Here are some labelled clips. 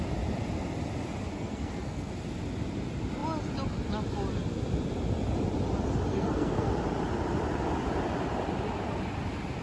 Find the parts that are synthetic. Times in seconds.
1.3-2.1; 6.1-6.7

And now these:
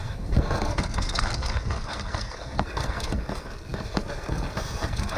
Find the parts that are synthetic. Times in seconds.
0.0-5.2

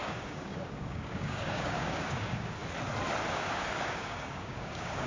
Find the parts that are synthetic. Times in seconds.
0.0-2.6; 3.3-5.1

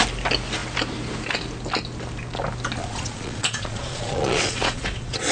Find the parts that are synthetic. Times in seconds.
2.8-5.3

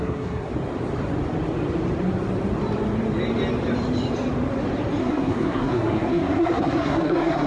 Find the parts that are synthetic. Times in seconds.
0.0-0.5; 5.0-7.5